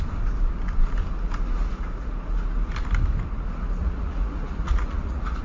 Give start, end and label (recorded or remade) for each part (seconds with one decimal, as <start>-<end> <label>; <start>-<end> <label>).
0.0-3.8 recorded; 3.8-5.4 remade